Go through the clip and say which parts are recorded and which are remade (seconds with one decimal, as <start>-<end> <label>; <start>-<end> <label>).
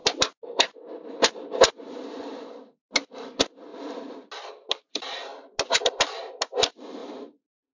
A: 0.0-7.8 recorded